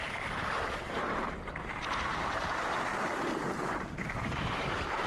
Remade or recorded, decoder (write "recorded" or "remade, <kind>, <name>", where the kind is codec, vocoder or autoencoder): remade, vocoder, BigVGAN v2